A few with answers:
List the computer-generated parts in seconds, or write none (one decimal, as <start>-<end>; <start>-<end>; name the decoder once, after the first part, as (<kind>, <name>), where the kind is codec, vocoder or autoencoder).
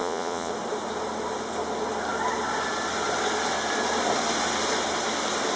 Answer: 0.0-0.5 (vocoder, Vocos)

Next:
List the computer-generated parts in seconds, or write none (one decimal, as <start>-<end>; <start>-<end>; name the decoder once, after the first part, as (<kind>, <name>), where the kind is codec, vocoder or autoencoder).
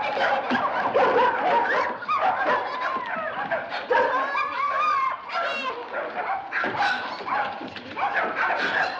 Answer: none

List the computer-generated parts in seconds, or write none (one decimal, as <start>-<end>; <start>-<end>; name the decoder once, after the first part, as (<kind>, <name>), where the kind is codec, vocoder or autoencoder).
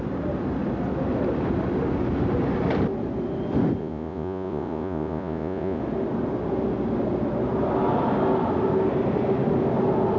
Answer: 3.8-5.8 (vocoder, Vocos)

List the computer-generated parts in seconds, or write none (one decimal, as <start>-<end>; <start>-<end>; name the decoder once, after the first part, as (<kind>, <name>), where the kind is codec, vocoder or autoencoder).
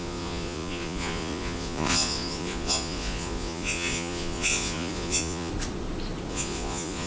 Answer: 0.0-5.5 (vocoder, Vocos); 6.3-7.1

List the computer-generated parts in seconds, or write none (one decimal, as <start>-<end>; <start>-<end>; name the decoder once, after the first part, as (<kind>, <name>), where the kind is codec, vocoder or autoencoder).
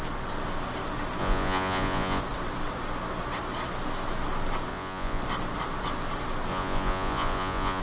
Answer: 1.2-2.2 (vocoder, Vocos); 4.7-5.2; 6.5-7.8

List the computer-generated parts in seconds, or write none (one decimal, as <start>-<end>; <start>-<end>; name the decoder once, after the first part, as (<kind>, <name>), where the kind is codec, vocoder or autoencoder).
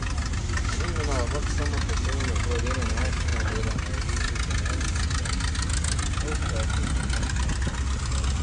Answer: none